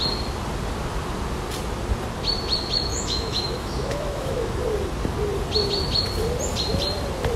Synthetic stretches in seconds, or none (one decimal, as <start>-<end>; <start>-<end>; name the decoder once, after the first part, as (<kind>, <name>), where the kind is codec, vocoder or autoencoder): 2.9-4.5 (autoencoder, DAC-VAE)

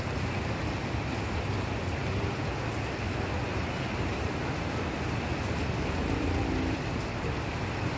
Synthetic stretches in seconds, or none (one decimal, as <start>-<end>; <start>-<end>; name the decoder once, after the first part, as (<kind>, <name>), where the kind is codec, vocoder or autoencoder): none